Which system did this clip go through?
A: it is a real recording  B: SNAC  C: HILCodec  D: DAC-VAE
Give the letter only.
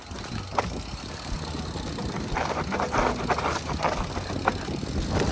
A